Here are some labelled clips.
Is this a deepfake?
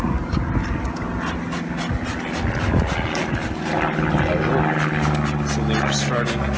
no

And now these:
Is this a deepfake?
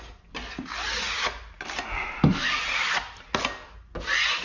no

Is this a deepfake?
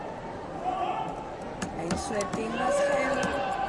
no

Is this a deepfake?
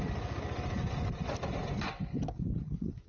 no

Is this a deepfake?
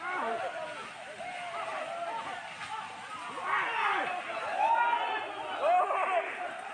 no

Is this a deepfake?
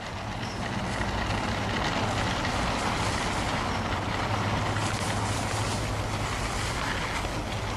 no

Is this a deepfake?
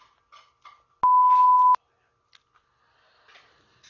no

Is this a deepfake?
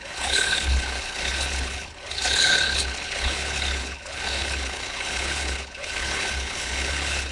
yes